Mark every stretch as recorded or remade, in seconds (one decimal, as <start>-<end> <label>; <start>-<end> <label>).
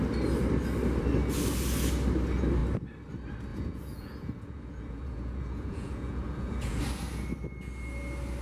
0.0-3.5 recorded; 3.5-6.8 remade; 6.8-8.4 recorded